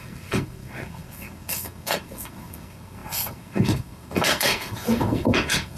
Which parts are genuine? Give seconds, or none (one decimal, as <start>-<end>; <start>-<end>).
none